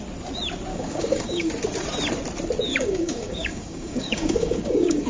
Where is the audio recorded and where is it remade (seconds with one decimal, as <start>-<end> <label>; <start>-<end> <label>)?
0.0-0.7 recorded; 0.7-1.5 remade; 1.5-2.7 recorded; 2.7-5.1 remade